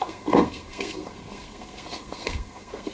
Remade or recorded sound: remade